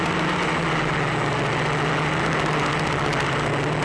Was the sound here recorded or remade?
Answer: recorded